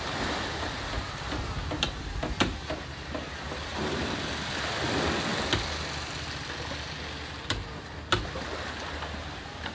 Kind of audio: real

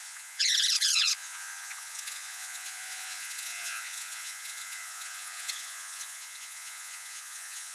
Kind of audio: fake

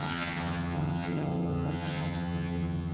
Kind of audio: fake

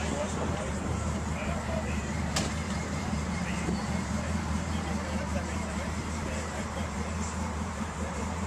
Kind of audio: fake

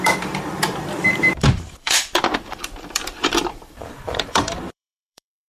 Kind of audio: fake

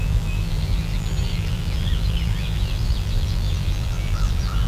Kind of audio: fake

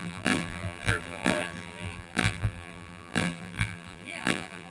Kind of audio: fake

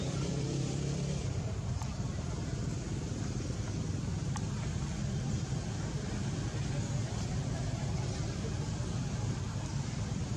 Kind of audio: fake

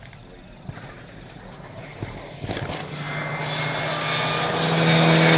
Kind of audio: real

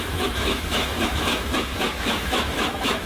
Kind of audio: fake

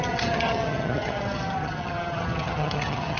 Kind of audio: fake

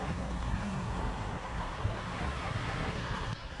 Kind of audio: fake